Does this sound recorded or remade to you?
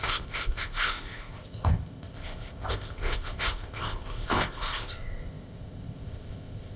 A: remade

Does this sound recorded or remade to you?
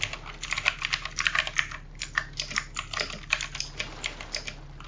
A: recorded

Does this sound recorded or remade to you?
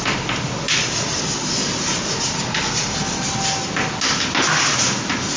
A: recorded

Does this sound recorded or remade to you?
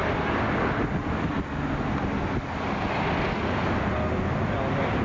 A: recorded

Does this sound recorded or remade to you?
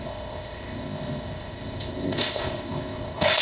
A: remade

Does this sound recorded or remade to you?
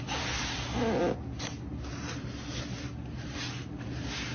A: recorded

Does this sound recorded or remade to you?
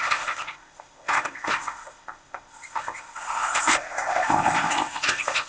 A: remade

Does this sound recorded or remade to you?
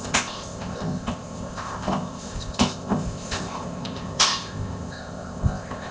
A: remade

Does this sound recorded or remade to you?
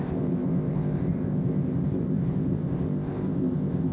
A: remade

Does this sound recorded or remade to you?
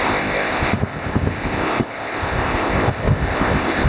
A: remade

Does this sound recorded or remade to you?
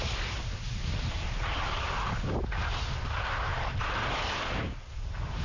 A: recorded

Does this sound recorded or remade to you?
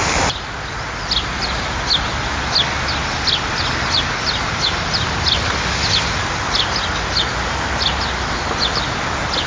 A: recorded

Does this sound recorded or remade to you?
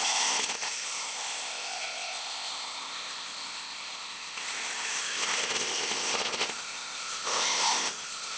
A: remade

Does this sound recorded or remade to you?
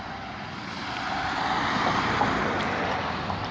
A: recorded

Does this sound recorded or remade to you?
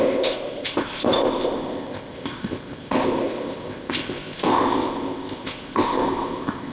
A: remade